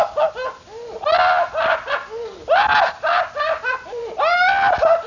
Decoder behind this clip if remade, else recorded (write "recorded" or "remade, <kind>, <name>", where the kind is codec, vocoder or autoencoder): recorded